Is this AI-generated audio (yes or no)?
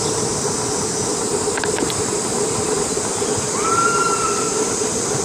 no